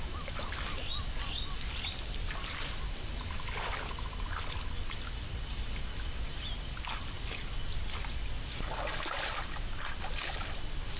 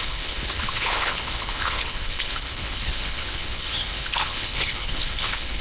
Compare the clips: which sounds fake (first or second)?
second